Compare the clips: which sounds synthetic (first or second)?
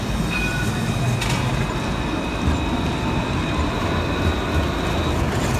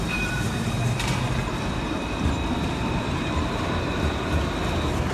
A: second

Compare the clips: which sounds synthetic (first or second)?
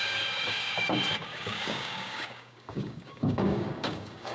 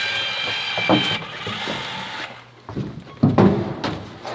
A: first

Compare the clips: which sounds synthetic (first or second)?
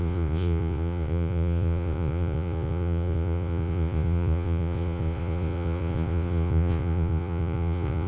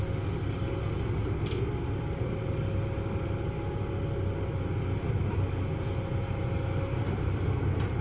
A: first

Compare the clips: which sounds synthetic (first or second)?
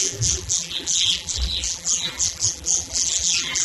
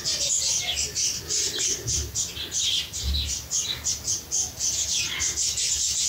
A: first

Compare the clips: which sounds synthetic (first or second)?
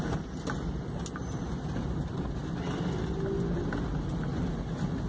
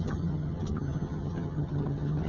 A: second